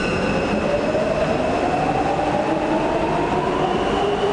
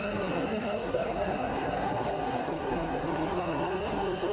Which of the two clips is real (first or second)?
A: first